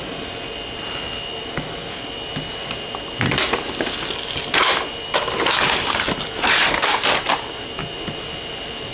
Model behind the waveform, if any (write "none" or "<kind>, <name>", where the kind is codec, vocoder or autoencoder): none